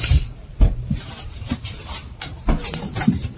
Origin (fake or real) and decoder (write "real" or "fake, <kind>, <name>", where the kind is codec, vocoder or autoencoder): fake, vocoder, BigVGAN v2